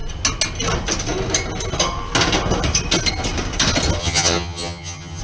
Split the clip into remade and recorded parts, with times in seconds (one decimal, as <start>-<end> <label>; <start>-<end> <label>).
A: 0.0-4.0 recorded; 4.0-5.2 remade